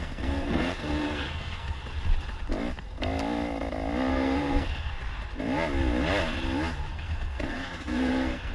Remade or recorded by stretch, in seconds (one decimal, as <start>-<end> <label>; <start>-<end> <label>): 0.0-1.8 remade; 1.8-4.1 recorded; 4.1-5.0 remade; 5.0-6.9 recorded; 6.9-8.5 remade